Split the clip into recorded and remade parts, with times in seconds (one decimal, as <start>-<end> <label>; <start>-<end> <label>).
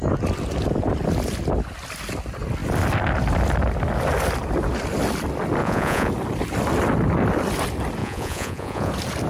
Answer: 0.0-5.6 recorded; 5.6-6.1 remade; 6.1-8.0 recorded; 8.0-8.9 remade; 8.9-9.3 recorded